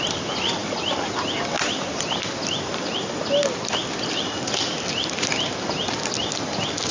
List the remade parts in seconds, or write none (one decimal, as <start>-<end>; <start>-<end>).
none